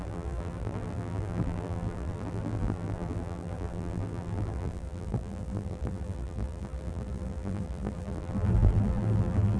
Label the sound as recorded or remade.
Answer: remade